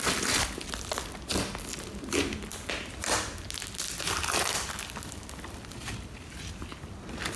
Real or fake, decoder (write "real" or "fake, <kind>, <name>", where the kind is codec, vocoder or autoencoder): real